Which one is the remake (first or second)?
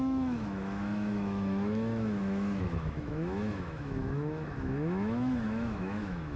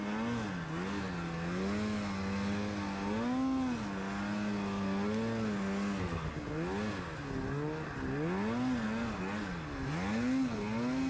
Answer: first